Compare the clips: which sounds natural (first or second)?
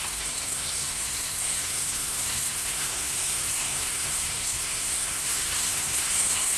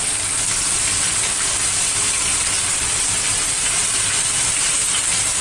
second